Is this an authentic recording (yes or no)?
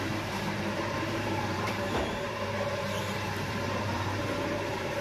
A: no